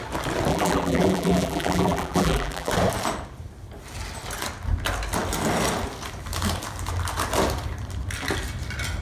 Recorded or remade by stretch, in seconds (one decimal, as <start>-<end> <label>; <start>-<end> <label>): 0.0-0.5 recorded; 0.5-2.7 remade; 2.7-9.0 recorded